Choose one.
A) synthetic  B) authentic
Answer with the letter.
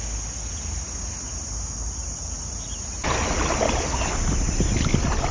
B